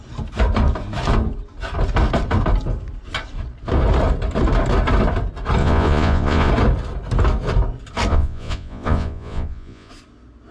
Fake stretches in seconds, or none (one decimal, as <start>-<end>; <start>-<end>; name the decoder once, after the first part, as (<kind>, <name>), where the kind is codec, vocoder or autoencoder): 5.6-6.5 (vocoder, Vocos); 8.1-9.9